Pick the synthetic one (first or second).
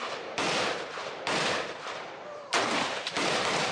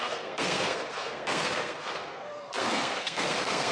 second